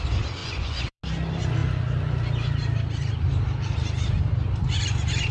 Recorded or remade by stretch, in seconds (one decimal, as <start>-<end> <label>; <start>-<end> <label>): 0.0-0.4 recorded; 0.4-1.0 remade; 1.0-5.3 recorded